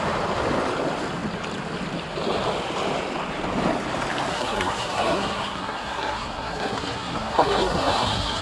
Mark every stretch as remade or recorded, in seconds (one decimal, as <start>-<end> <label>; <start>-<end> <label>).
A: 0.0-4.3 recorded; 4.3-8.4 remade